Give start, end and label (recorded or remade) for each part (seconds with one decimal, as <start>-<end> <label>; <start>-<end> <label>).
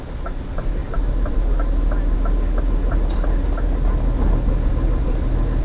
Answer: 0.0-0.8 recorded; 0.8-4.2 remade; 4.2-5.6 recorded